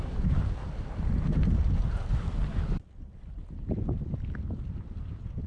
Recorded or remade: recorded